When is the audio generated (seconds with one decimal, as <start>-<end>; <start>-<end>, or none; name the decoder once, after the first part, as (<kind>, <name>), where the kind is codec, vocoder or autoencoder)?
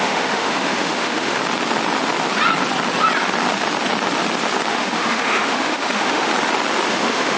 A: 0.0-1.4 (autoencoder, DAC-VAE); 4.7-6.3; 6.9-7.4